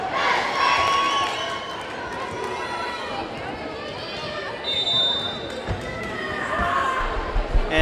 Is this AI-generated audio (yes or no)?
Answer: no